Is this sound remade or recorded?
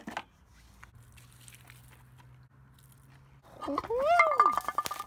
recorded